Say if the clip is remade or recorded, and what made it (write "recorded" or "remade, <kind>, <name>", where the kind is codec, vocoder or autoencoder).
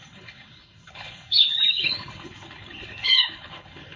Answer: remade, codec, HILCodec